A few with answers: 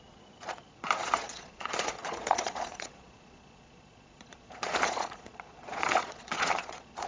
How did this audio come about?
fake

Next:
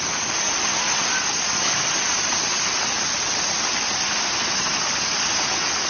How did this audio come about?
real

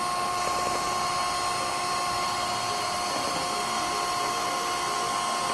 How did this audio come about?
real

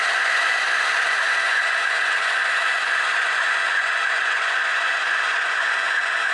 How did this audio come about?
fake